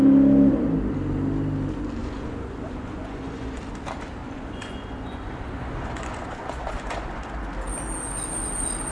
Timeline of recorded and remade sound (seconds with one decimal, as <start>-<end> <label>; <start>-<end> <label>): 0.0-2.0 recorded; 2.0-3.6 remade; 3.6-4.2 recorded; 4.2-7.3 remade; 7.3-8.9 recorded